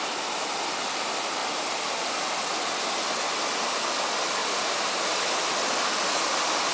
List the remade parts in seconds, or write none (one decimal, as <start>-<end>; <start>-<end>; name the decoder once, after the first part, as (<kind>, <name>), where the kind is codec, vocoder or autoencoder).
4.4-5.2 (vocoder, BigVGAN v2)